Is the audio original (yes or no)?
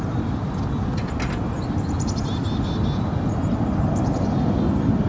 yes